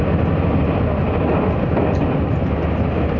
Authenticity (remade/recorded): recorded